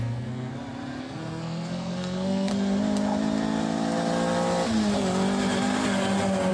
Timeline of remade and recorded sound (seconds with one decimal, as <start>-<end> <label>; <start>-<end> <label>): 0.0-0.5 remade; 0.5-1.0 recorded; 1.0-2.5 remade; 2.5-6.5 recorded